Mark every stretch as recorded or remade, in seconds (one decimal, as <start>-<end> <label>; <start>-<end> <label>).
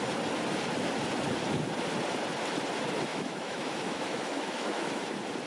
0.0-3.1 recorded; 3.1-5.0 remade; 5.0-5.5 recorded